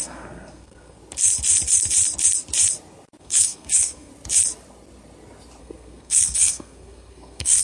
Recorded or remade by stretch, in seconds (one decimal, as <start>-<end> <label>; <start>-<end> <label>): 0.0-1.0 remade; 1.0-3.2 recorded; 3.2-4.1 remade; 4.1-5.6 recorded; 5.6-7.6 remade